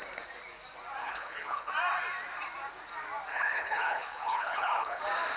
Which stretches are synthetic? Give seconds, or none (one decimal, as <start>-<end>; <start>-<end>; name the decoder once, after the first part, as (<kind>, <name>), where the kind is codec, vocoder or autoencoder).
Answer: 1.0-1.7 (codec, HILCodec); 3.3-5.0